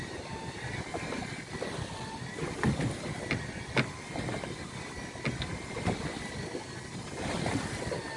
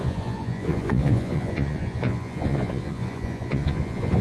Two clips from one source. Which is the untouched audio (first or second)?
first